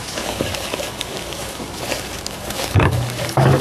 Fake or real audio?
fake